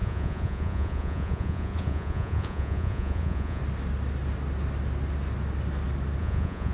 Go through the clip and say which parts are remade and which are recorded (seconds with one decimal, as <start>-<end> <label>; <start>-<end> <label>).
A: 0.0-3.6 remade; 3.6-6.2 recorded; 6.2-6.7 remade